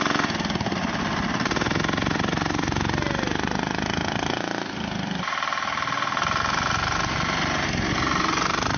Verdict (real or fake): real